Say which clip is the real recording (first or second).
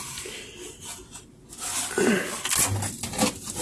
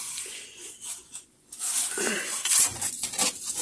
first